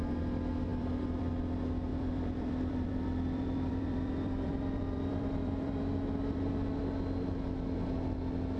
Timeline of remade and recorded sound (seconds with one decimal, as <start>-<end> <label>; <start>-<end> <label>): 0.0-0.7 recorded; 0.7-1.3 remade; 1.3-1.9 recorded; 1.9-6.8 remade; 6.8-8.6 recorded